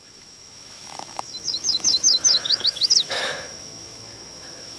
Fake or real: fake